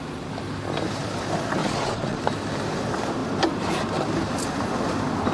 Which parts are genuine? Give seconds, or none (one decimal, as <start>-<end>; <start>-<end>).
0.0-1.6; 2.2-5.3